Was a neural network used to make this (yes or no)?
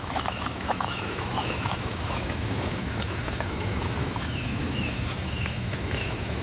yes